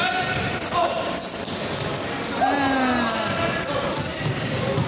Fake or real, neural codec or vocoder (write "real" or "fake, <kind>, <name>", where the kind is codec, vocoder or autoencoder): real